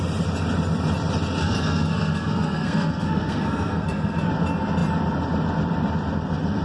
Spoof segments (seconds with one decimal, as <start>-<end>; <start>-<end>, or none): 1.4-4.3